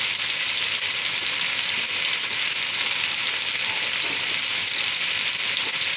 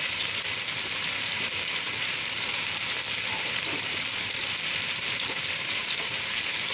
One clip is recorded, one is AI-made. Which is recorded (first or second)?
first